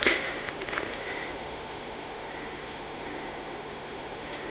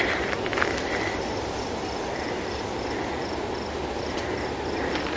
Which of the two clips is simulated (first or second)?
first